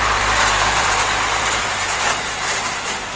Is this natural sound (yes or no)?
no